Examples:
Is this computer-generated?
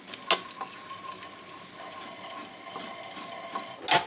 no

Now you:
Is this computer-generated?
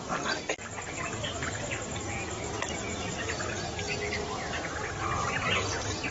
no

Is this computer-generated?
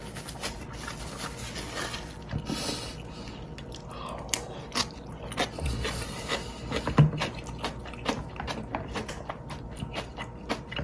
no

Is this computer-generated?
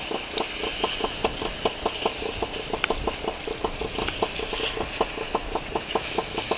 no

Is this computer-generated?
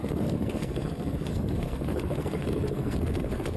yes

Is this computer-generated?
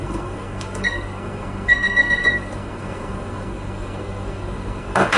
yes